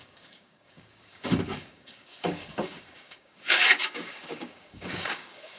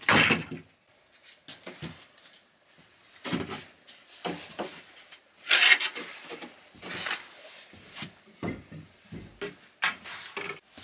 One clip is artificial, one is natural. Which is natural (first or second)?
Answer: second